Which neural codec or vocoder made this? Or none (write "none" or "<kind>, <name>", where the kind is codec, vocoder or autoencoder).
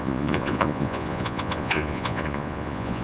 vocoder, Vocos